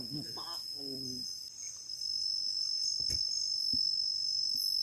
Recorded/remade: recorded